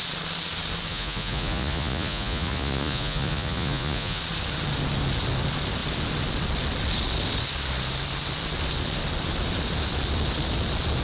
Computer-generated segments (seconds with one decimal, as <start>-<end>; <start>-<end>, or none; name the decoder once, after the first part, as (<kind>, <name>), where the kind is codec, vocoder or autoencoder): 0.9-4.2 (vocoder, Vocos)